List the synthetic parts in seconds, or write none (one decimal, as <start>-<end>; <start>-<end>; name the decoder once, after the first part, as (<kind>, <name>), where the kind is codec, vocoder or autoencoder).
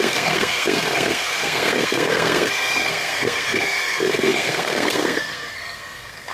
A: 0.0-6.3 (codec, SNAC)